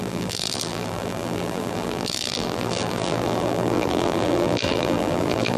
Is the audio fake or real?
fake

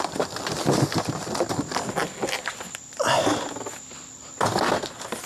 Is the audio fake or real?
real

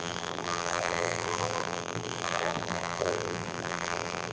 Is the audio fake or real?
fake